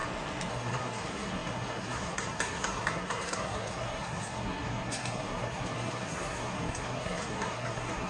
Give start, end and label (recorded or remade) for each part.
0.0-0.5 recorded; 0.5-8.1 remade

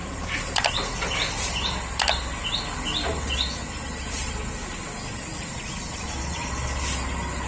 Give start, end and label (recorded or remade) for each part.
0.0-7.5 recorded

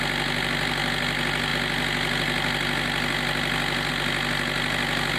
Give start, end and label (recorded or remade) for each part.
0.0-5.2 recorded

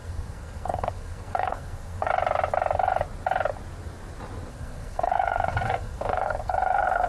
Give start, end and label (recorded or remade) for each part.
0.0-2.1 remade; 2.1-4.5 recorded; 4.5-7.1 remade

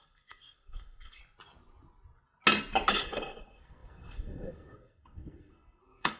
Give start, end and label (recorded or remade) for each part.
0.0-1.2 remade; 1.2-2.9 recorded; 2.9-6.2 remade

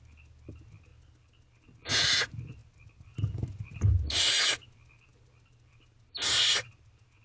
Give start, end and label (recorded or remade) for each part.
0.0-7.2 recorded

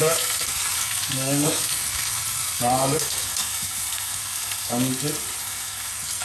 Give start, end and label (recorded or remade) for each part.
0.0-4.9 remade; 4.9-5.4 recorded; 5.4-6.2 remade

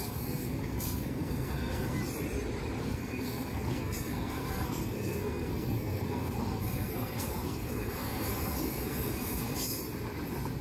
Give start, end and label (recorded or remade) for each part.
0.0-2.0 remade; 2.0-2.8 recorded; 2.8-9.8 remade; 9.8-10.6 recorded